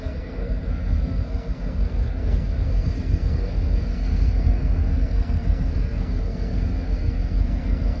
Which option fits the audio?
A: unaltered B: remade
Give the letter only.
B